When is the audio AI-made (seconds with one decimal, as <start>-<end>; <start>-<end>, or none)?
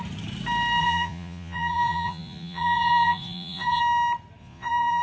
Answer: 0.8-3.8; 4.4-5.0